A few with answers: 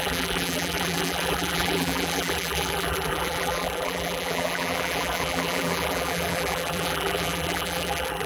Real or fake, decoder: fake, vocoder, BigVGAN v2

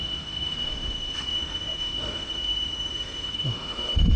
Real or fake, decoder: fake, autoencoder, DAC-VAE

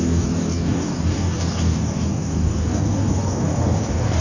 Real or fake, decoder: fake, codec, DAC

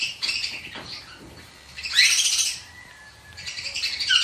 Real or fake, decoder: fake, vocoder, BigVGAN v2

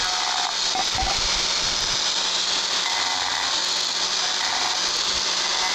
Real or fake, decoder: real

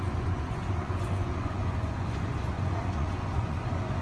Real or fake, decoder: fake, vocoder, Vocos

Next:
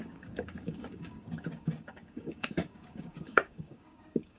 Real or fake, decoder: fake, codec, DAC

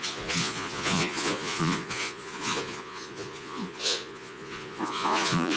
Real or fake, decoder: fake, vocoder, Vocos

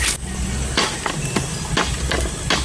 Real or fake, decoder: real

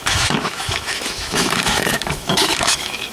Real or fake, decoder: fake, autoencoder, DAC-VAE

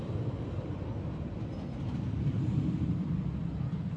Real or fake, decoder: real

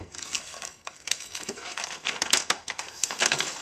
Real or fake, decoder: fake, codec, SNAC